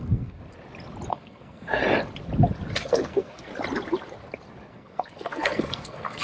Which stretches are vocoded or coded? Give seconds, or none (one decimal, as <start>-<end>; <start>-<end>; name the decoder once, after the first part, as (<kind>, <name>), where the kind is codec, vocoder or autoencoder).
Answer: 0.0-0.4 (codec, SNAC); 1.1-1.8; 2.8-3.5; 4.7-6.2